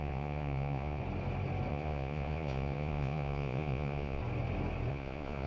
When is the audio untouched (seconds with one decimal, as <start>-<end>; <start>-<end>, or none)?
1.0-1.7; 4.2-4.9

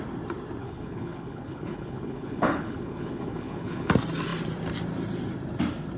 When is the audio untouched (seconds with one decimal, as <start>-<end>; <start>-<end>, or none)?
0.0-0.6; 3.9-6.0

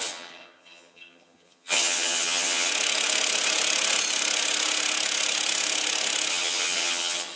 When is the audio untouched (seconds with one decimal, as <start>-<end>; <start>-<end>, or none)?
2.7-6.3

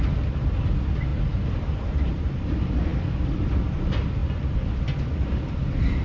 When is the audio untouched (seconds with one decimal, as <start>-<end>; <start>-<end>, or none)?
0.0-1.1; 2.1-6.0

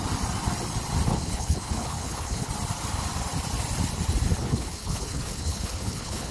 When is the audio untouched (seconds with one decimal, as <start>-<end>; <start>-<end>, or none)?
0.0-1.1; 2.5-4.4

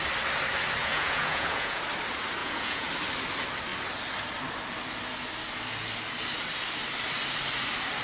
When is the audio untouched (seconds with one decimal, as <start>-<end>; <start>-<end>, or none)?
0.0-0.8; 1.8-2.4; 2.9-8.0

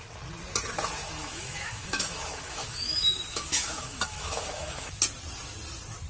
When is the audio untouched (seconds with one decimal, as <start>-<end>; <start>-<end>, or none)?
0.0-1.2; 4.9-6.1